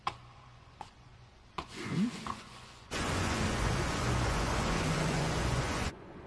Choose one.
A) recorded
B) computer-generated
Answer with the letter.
B